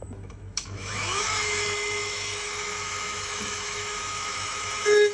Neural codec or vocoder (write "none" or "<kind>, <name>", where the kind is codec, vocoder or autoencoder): autoencoder, DAC-VAE